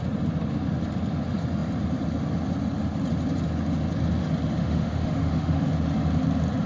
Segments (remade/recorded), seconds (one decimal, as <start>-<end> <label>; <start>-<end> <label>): 0.0-4.6 recorded; 4.6-5.7 remade; 5.7-6.7 recorded